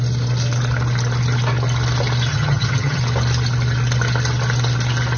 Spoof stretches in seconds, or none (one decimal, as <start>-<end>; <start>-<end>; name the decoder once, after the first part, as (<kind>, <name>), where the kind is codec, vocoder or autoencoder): 2.3-3.0 (vocoder, HiFi-GAN)